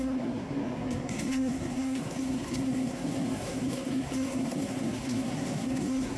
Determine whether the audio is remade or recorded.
remade